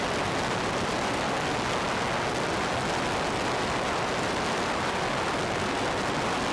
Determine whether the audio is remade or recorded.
recorded